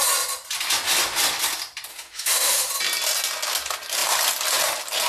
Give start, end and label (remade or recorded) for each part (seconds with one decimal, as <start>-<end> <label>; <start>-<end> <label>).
0.0-1.9 recorded; 1.9-2.7 remade; 2.7-5.1 recorded